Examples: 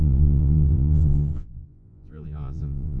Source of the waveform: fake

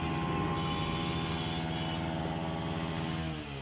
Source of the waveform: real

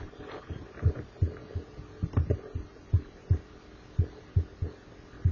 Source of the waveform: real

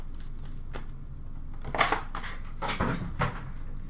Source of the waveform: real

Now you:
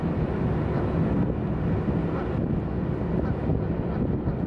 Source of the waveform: real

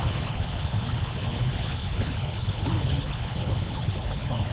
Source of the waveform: fake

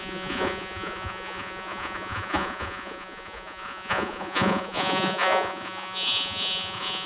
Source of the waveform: fake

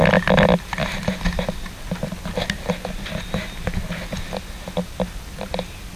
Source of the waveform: real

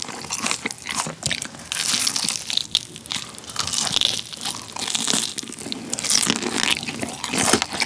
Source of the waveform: real